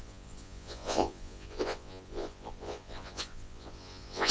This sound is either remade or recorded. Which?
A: remade